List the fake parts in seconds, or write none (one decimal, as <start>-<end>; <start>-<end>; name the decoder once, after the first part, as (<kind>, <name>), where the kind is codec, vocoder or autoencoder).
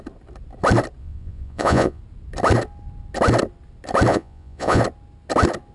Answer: 1.0-2.0 (vocoder, Vocos); 4.1-4.8